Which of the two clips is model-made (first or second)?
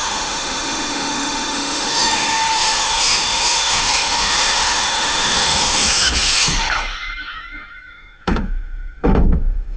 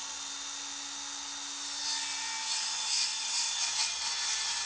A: first